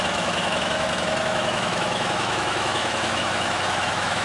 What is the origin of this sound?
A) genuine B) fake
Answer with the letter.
B